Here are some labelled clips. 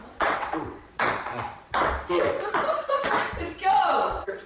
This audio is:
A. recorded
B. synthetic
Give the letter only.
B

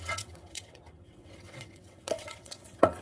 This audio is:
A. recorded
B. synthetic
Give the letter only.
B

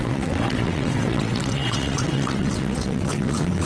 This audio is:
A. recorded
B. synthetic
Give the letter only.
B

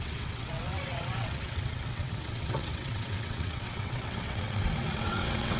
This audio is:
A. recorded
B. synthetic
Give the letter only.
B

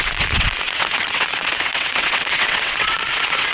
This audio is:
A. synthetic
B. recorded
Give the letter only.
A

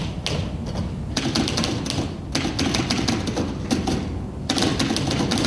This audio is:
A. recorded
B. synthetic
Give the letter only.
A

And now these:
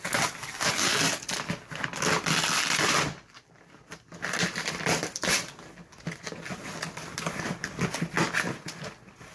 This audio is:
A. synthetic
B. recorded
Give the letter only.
B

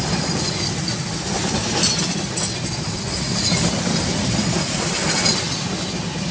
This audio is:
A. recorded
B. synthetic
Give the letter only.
A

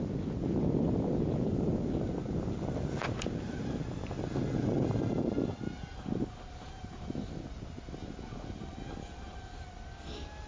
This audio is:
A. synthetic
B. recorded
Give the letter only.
B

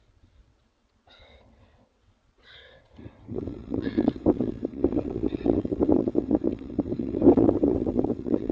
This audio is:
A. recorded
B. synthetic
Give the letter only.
B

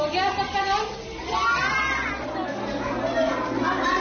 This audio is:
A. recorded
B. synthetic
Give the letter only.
A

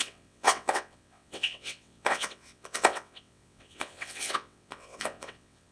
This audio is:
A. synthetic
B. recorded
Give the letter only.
A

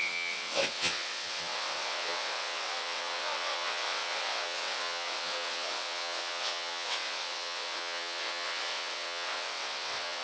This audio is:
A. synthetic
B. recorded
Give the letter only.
A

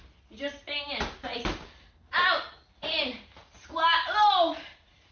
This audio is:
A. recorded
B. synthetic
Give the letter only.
A